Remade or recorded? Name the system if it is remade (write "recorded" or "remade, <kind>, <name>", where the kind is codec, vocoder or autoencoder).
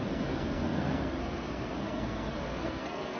remade, codec, SNAC